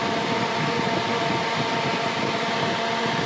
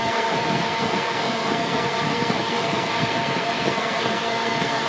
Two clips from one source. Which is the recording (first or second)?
first